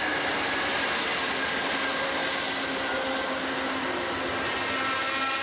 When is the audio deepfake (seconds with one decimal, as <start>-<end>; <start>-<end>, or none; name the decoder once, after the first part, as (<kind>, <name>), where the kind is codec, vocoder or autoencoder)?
none